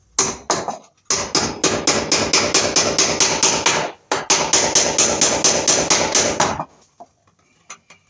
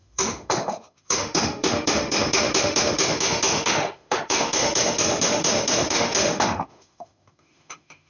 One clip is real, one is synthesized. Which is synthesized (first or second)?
second